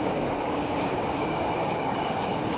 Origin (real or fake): fake